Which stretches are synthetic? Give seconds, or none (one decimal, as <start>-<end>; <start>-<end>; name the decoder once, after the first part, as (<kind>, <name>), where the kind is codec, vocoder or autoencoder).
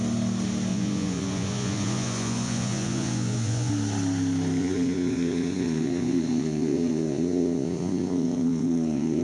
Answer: 0.7-3.7 (vocoder, Vocos); 4.6-9.2